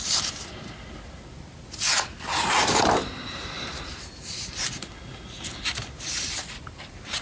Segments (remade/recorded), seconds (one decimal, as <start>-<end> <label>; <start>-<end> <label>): 0.0-7.2 recorded